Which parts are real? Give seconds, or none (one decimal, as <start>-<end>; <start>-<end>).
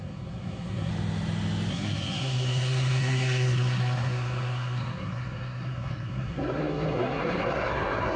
0.9-1.7